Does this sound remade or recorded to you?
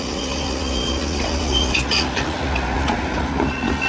remade